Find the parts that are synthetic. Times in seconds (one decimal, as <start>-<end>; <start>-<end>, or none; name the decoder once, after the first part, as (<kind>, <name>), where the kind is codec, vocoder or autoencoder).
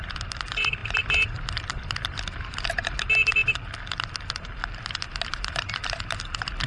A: 0.0-3.4 (vocoder, BigVGAN v2); 6.3-6.7